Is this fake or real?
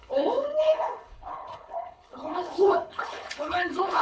fake